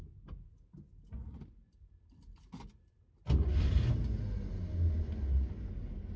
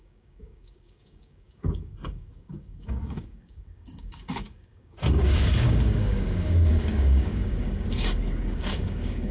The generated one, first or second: second